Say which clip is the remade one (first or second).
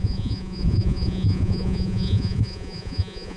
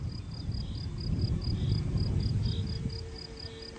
first